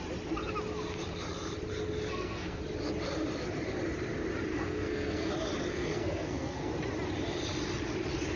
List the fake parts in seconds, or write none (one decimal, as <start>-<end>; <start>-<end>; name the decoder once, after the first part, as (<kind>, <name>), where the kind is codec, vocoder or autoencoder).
2.1-2.6 (codec, SNAC); 4.5-5.3; 5.7-6.7